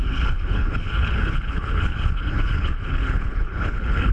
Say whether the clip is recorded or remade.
remade